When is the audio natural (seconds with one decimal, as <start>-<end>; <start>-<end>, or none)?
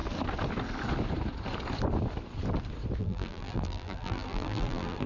0.0-3.0